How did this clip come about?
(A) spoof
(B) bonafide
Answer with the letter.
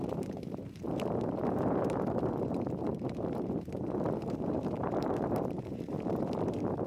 A